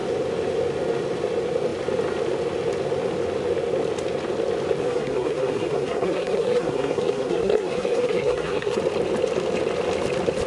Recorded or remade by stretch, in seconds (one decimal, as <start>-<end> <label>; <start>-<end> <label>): 0.0-4.8 recorded; 4.8-8.8 remade; 8.8-10.5 recorded